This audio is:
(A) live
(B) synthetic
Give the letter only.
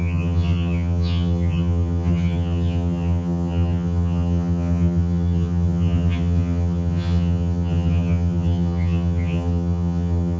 B